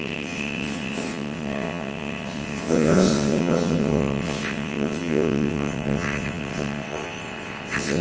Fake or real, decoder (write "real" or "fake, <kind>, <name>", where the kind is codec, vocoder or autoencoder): fake, vocoder, WaveNeXt